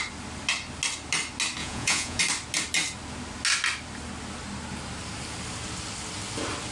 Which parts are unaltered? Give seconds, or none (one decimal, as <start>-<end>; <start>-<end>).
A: 0.0-1.6; 2.2-6.7